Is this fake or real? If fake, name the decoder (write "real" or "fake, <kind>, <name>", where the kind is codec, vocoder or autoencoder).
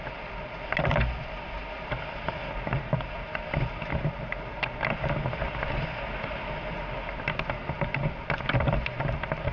real